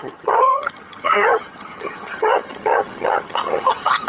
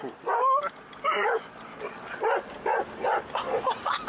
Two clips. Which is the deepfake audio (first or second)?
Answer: first